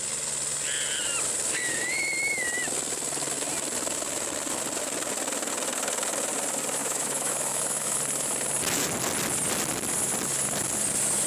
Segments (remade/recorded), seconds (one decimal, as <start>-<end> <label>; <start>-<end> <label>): 0.0-6.8 recorded; 6.8-8.0 remade; 8.0-11.3 recorded